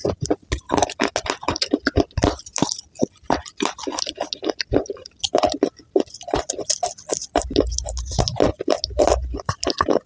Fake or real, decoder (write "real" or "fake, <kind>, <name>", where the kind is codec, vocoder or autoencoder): real